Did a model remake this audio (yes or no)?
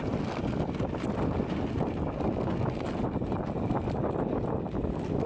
no